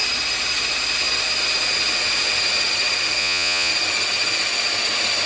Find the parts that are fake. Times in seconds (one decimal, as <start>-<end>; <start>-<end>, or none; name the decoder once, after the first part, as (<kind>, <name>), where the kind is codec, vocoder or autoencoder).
3.2-3.7 (vocoder, Vocos)